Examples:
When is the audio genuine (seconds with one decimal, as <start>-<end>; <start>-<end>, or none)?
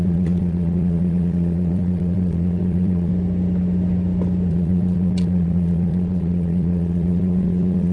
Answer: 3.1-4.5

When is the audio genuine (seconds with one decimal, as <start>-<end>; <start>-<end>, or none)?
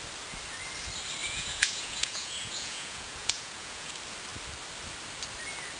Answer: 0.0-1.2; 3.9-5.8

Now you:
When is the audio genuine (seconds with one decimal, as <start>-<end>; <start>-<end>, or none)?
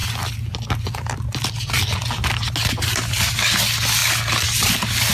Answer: 0.0-5.1